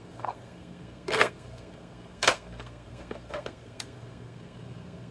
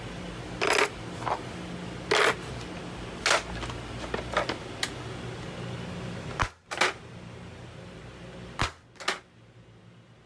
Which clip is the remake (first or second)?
first